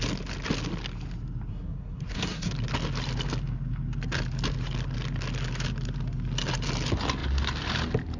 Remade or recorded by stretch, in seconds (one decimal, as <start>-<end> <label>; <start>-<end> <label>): 0.0-1.5 recorded; 1.5-2.5 remade; 2.5-8.2 recorded